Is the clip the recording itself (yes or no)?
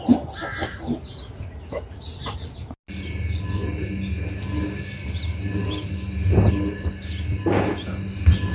yes